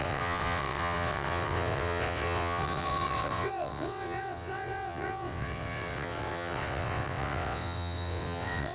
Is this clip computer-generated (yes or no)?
yes